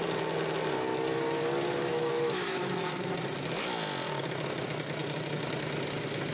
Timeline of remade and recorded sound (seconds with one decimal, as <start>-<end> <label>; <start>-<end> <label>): 0.0-1.9 recorded; 1.9-3.1 remade; 3.1-6.3 recorded